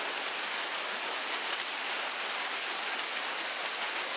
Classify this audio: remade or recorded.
recorded